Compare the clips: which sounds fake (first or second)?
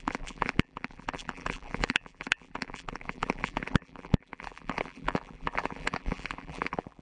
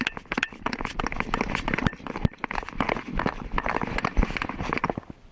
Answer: first